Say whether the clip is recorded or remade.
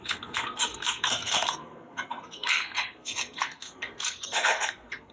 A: remade